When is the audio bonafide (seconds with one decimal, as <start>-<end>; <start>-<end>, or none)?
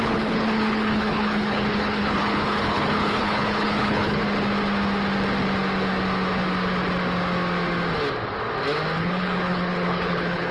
4.2-9.0